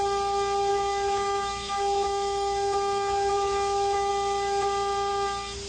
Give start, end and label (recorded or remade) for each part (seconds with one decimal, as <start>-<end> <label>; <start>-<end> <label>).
0.0-0.7 recorded; 0.7-4.1 remade; 4.1-5.7 recorded